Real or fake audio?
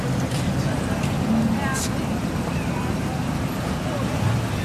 real